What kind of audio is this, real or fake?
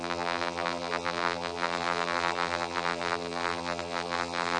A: fake